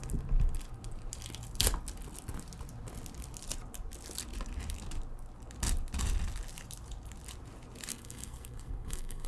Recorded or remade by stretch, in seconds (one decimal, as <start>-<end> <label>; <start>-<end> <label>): 0.0-7.9 recorded; 7.9-9.3 remade